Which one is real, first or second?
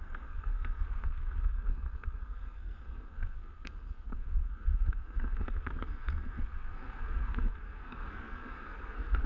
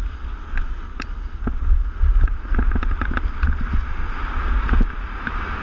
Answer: second